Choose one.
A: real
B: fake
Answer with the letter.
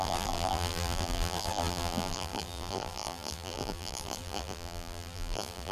B